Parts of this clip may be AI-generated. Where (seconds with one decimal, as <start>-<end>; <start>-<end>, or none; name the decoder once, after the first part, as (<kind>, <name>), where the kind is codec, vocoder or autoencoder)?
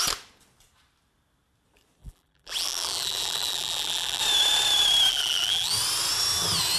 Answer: 2.0-4.2 (vocoder, BigVGAN v2); 5.1-5.7